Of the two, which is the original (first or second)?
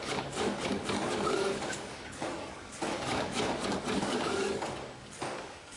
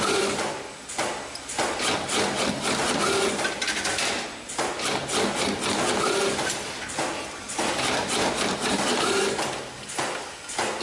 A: second